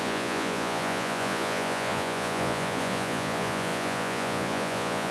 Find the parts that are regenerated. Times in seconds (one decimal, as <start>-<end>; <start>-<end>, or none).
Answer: 0.0-5.1